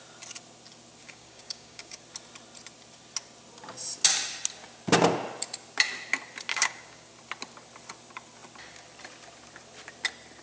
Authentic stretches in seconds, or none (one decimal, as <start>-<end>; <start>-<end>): 0.0-1.0; 2.0-6.5; 7.1-10.4

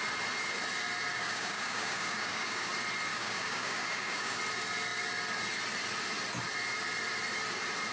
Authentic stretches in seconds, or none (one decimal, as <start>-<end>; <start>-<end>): 0.0-1.1; 2.7-3.1; 4.4-7.9

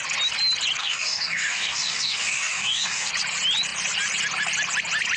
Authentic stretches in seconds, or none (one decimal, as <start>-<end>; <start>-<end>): 0.0-0.8; 3.1-5.2

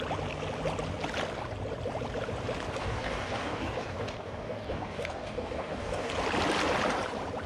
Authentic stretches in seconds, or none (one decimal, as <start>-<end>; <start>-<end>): 0.0-2.8; 6.1-7.5

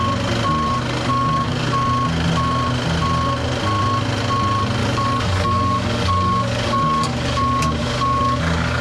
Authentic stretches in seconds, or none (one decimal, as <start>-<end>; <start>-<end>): 0.0-1.1; 1.7-4.8

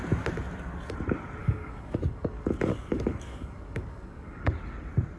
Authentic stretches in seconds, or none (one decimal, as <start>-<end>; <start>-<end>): 0.0-1.4; 4.5-5.2

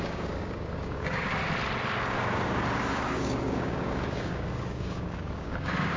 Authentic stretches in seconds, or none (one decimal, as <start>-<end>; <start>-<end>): 1.4-2.1

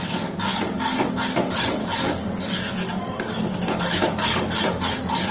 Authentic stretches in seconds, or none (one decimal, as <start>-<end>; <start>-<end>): 0.0-0.5; 1.1-1.8; 4.6-5.3